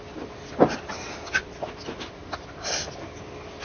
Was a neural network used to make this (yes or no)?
no